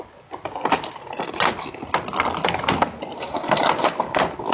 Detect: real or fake real